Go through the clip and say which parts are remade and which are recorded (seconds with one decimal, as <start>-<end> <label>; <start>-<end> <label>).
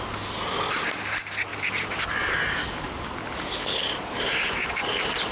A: 0.0-5.3 recorded